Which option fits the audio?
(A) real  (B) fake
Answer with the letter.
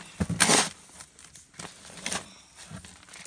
A